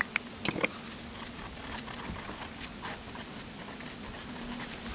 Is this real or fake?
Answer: real